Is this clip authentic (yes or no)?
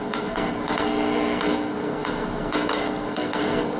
no